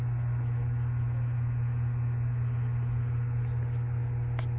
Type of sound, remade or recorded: recorded